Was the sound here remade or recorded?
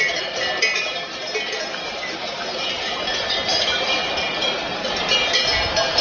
remade